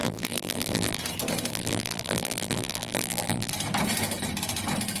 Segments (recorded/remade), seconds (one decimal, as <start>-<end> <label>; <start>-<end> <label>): 0.0-1.0 remade; 1.0-1.5 recorded; 1.5-3.5 remade; 3.5-5.0 recorded